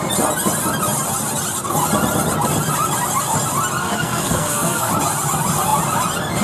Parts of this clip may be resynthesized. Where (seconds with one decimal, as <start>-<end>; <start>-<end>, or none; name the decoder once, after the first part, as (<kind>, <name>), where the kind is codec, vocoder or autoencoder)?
3.8-4.9 (codec, SNAC)